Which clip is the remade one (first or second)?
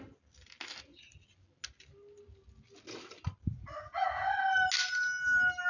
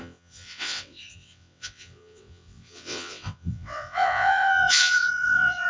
second